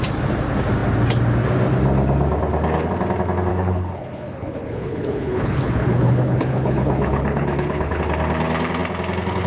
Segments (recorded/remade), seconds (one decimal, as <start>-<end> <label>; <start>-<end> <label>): 0.0-3.5 recorded; 3.5-8.0 remade; 8.0-9.5 recorded